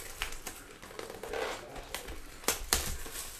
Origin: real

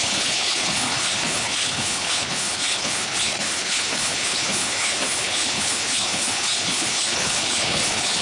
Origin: fake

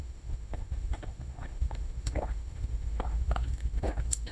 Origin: fake